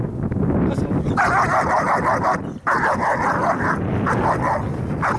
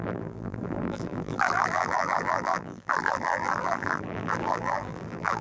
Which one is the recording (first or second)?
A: first